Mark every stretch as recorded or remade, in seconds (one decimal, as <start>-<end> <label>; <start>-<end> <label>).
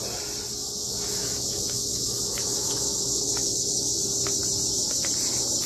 0.0-0.6 recorded; 0.6-4.0 remade; 4.0-5.7 recorded